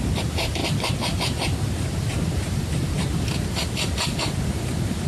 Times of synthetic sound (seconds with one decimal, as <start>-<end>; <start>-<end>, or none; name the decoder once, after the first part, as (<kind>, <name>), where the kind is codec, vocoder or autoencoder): 0.0-5.1 (vocoder, BigVGAN v2)